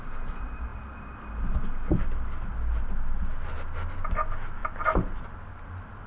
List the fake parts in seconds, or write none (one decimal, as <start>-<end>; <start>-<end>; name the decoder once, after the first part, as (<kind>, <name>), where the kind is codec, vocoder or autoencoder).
none